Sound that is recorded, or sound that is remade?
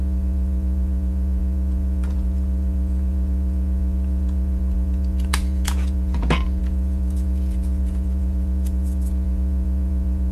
remade